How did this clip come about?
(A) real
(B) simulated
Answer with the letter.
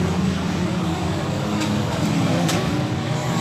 B